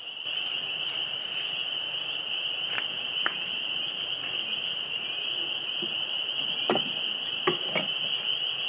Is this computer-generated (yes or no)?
no